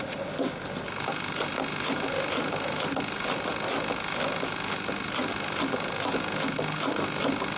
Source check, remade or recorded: recorded